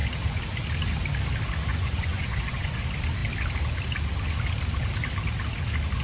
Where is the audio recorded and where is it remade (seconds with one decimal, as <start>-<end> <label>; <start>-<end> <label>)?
0.0-1.7 recorded; 1.7-2.8 remade; 2.8-6.0 recorded